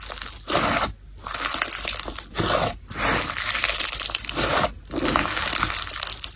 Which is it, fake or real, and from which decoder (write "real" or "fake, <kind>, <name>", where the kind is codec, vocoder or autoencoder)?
real